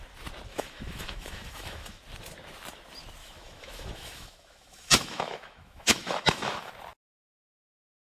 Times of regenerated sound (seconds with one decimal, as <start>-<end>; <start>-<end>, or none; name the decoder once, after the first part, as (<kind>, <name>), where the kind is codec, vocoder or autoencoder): 0.5-2.0 (autoencoder, DAC-VAE); 3.2-6.7